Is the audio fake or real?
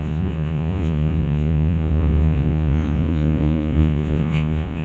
fake